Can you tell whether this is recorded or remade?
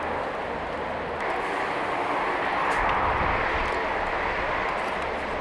recorded